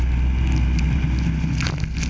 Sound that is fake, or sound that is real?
real